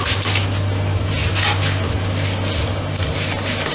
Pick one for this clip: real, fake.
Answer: real